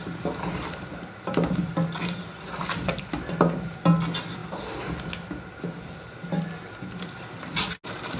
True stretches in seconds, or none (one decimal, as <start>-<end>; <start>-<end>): 0.0-8.2